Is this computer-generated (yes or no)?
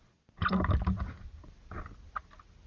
no